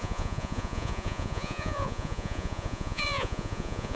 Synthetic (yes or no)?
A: yes